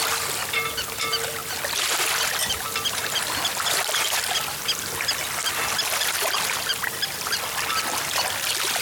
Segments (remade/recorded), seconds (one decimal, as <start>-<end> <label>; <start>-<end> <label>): 0.0-1.4 remade; 1.4-3.5 recorded; 3.5-4.6 remade; 4.6-6.0 recorded; 6.0-8.8 remade